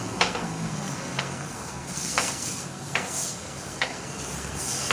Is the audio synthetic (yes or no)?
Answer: yes